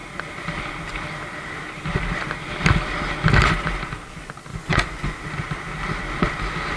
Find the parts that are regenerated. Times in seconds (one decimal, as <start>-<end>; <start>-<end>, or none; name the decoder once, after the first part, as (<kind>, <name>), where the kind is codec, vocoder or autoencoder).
4.5-5.2 (vocoder, Vocos)